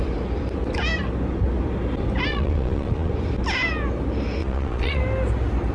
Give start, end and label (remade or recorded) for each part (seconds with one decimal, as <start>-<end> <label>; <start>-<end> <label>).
0.0-2.3 recorded; 2.3-3.1 remade; 3.1-4.4 recorded; 4.4-5.0 remade; 5.0-5.7 recorded